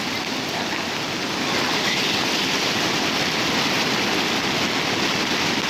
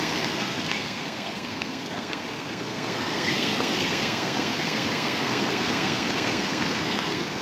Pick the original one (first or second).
first